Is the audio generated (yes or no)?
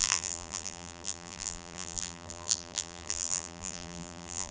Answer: yes